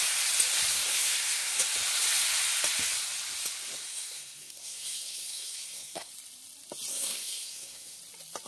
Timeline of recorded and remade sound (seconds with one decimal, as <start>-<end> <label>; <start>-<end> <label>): 0.0-0.7 recorded; 0.7-1.6 remade; 1.6-3.8 recorded; 3.8-6.1 remade; 6.1-6.9 recorded; 6.9-8.0 remade; 8.0-8.5 recorded